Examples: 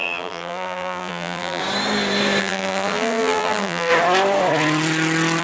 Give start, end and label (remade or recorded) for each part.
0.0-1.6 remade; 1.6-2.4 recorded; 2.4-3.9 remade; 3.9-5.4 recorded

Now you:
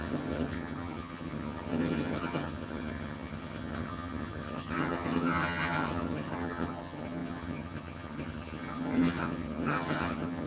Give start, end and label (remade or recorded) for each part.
0.0-10.5 remade

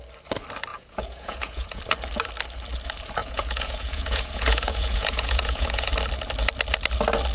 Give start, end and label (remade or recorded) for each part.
0.0-0.7 recorded; 0.7-1.8 remade; 1.8-3.2 recorded; 3.2-5.9 remade; 5.9-7.3 recorded

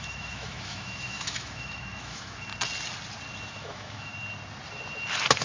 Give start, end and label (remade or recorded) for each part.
0.0-2.5 remade; 2.5-3.5 recorded; 3.5-4.1 remade; 4.1-5.4 recorded

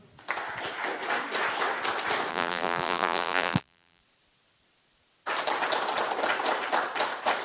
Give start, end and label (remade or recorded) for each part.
0.0-2.3 recorded; 2.3-4.0 remade; 4.0-7.4 recorded